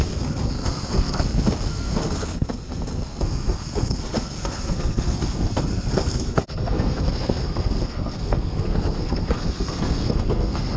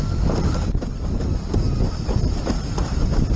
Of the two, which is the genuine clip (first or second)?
second